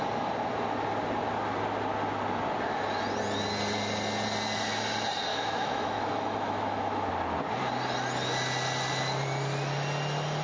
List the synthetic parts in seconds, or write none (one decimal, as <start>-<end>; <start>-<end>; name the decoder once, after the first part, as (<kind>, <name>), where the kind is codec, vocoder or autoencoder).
5.3-7.1 (autoencoder, DAC-VAE)